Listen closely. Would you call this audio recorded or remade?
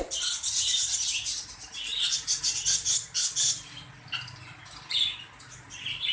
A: recorded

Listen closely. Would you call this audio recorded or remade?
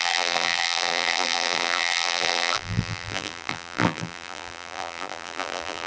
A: remade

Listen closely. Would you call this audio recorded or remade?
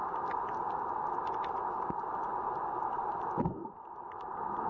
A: recorded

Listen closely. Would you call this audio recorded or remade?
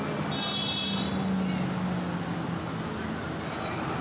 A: recorded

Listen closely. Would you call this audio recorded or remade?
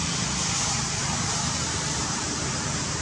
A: remade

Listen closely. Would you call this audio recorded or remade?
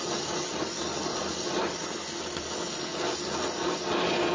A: recorded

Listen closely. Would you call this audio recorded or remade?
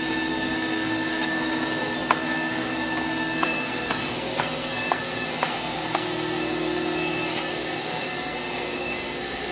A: remade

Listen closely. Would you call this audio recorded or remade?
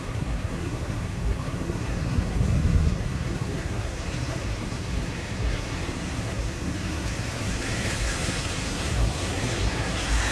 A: remade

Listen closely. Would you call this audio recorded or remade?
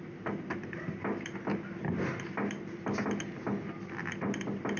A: recorded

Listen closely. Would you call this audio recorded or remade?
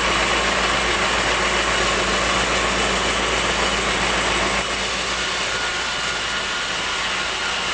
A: recorded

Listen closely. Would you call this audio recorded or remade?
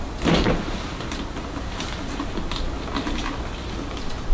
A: recorded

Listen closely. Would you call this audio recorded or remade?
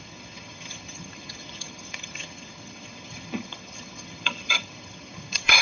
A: remade